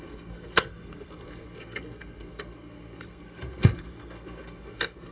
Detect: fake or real fake